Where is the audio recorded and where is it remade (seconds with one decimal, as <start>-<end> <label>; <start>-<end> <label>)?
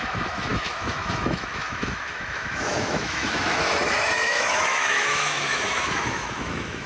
0.0-6.9 remade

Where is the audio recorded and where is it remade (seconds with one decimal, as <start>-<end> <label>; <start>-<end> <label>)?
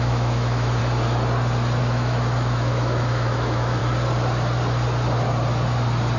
0.0-0.8 remade; 0.8-1.8 recorded; 1.8-3.8 remade; 3.8-6.2 recorded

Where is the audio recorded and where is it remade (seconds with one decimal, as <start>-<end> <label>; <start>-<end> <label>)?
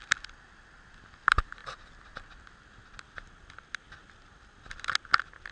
0.0-5.5 recorded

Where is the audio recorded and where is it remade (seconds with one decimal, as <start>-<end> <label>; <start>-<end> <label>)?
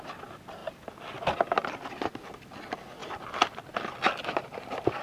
0.0-5.0 recorded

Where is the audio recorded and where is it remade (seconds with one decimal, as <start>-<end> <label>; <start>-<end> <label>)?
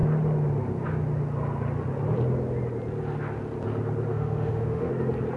0.0-4.1 recorded; 4.1-4.9 remade; 4.9-5.4 recorded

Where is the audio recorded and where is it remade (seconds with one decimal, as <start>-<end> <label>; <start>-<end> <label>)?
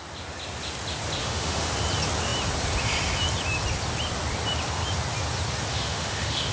0.0-1.2 recorded; 1.2-1.7 remade; 1.7-5.7 recorded; 5.7-6.5 remade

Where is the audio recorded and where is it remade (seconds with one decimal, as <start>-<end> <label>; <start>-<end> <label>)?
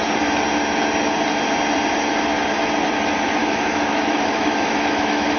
0.0-3.4 recorded; 3.4-5.4 remade